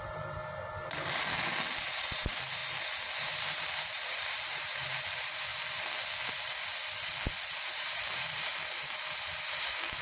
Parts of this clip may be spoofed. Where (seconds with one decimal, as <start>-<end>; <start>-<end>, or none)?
0.0-0.4; 2.1-2.6; 3.2-5.5; 7.5-8.5